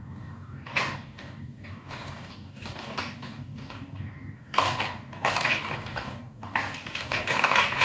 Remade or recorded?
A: remade